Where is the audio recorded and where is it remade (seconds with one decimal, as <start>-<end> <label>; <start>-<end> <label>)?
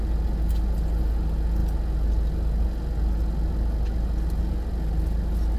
0.0-5.6 recorded